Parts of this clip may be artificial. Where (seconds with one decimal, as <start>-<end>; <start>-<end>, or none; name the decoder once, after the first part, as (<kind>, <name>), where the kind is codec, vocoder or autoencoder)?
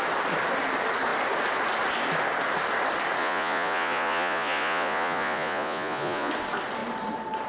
3.2-6.3 (vocoder, Vocos)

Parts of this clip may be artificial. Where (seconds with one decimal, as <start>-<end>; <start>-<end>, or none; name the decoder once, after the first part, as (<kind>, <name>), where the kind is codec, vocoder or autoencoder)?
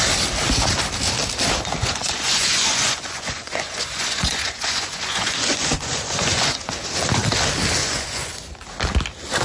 1.8-6.7 (vocoder, Vocos); 7.8-8.5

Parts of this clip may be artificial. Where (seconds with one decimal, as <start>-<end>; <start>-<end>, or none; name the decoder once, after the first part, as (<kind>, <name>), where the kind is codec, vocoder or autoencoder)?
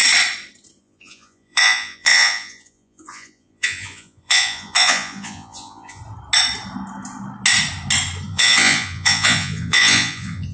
0.8-6.0 (vocoder, Vocos); 8.3-10.5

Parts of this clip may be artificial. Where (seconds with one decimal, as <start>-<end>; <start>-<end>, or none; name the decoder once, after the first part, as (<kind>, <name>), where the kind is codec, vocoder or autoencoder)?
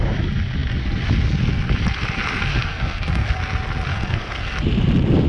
2.5-3.4 (codec, SNAC); 3.9-4.5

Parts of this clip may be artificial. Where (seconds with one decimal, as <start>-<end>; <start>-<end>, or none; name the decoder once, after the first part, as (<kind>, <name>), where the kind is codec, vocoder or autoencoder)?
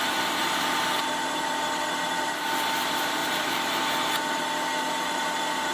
0.0-5.7 (vocoder, BigVGAN v2)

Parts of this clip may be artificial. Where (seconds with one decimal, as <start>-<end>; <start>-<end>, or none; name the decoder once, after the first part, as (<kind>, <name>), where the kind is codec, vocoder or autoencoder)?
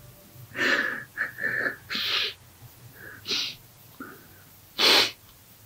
none